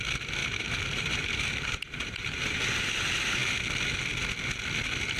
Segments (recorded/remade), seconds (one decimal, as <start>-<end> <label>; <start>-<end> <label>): 0.0-0.4 recorded; 0.4-2.6 remade; 2.6-5.2 recorded